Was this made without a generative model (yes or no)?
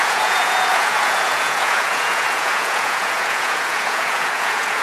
no